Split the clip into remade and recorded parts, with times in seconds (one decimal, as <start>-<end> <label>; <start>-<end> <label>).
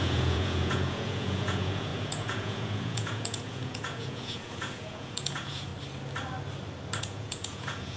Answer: 0.0-5.7 remade; 5.7-7.0 recorded; 7.0-8.0 remade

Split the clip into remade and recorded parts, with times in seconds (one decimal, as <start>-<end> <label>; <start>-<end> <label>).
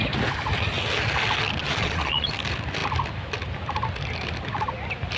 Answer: 0.0-1.6 recorded; 1.6-2.3 remade; 2.3-5.2 recorded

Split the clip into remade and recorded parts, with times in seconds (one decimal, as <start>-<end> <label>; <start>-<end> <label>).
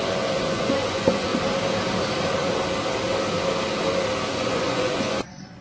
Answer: 0.0-1.3 remade; 1.3-4.3 recorded; 4.3-5.6 remade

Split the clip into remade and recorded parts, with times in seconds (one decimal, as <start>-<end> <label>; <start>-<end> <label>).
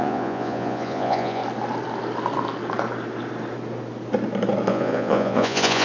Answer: 0.0-1.4 remade; 1.4-4.7 recorded; 4.7-5.8 remade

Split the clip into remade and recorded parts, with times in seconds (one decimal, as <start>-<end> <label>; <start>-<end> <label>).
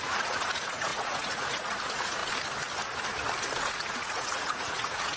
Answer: 0.0-2.2 remade; 2.2-3.7 recorded; 3.7-5.2 remade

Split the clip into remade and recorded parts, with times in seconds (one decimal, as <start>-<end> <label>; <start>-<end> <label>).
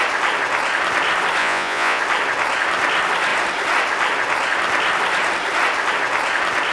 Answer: 0.0-1.4 recorded; 1.4-2.0 remade; 2.0-6.7 recorded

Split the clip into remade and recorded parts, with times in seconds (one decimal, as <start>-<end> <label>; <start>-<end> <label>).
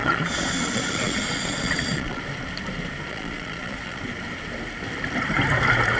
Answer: 0.0-2.2 remade; 2.2-3.1 recorded; 3.1-4.0 remade; 4.0-6.0 recorded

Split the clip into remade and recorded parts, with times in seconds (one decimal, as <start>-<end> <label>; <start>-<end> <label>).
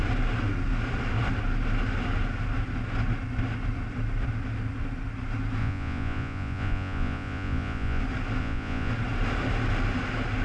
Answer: 0.0-5.6 recorded; 5.6-8.0 remade; 8.0-8.4 recorded; 8.4-8.9 remade; 8.9-10.4 recorded